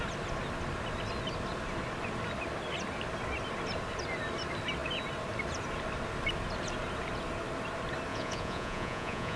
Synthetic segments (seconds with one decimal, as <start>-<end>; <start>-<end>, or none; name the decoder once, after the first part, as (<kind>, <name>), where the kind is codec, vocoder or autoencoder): 8.1-9.4 (vocoder, Vocos)

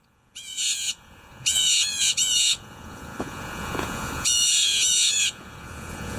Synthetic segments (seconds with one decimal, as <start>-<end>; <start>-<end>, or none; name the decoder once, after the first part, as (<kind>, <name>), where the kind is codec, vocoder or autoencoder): 0.0-6.2 (vocoder, Vocos)

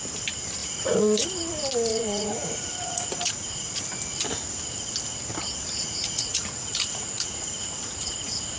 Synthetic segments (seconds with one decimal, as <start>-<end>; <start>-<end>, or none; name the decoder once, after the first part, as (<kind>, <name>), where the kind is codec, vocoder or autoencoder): 0.6-1.3 (vocoder, Vocos); 1.9-3.8; 5.8-8.6

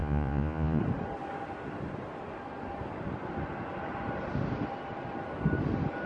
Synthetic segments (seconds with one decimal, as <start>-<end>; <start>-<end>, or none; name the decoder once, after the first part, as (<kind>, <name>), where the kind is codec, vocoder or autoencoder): 0.0-0.8 (vocoder, Vocos)

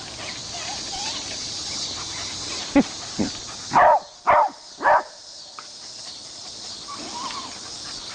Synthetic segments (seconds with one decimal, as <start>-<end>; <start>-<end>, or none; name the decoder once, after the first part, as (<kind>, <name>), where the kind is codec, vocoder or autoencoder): 5.9-6.7 (vocoder, Vocos)

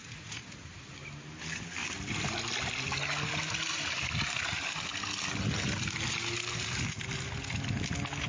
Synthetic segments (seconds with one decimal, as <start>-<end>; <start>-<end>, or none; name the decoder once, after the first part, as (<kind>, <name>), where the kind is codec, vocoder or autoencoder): 0.0-0.7 (vocoder, Vocos)

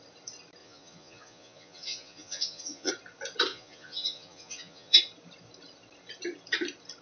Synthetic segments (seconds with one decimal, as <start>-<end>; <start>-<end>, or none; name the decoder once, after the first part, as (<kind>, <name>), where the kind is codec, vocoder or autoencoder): 0.6-2.9 (vocoder, Vocos); 3.5-5.0